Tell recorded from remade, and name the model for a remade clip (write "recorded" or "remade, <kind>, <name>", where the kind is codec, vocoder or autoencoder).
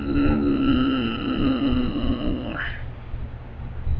recorded